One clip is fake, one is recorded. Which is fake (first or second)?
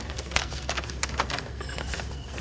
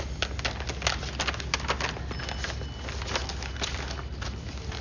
first